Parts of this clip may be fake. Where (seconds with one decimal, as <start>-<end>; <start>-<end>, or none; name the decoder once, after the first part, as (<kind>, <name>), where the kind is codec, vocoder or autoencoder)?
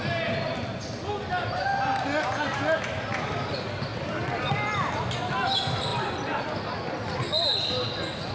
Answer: none